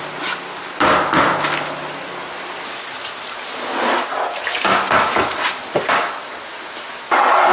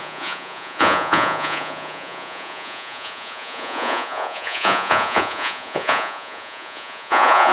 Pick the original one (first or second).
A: first